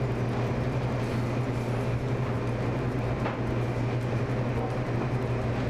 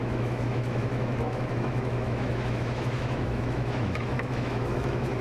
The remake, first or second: second